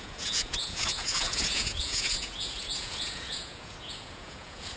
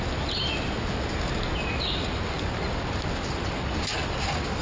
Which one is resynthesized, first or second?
first